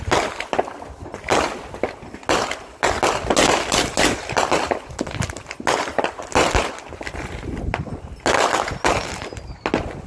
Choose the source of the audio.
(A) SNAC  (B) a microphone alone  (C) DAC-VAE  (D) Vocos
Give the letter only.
B